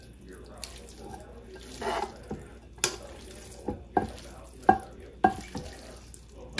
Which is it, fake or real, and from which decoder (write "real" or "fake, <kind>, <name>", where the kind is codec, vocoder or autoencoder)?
real